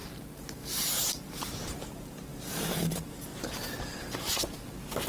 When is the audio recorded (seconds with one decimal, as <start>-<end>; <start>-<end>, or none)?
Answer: 3.3-5.1